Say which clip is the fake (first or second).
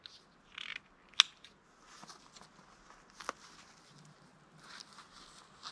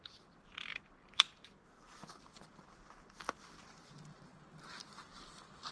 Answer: second